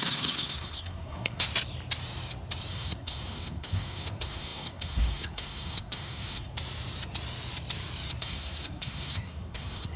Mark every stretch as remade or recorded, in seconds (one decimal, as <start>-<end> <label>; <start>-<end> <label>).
0.0-1.5 remade; 1.5-2.7 recorded; 2.7-6.5 remade; 6.5-8.1 recorded; 8.1-10.0 remade